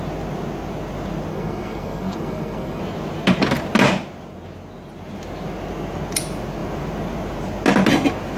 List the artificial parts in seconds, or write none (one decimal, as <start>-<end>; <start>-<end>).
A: 1.3-2.8